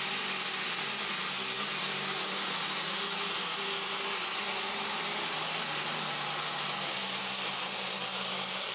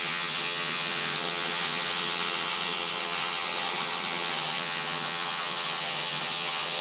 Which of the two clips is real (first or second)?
first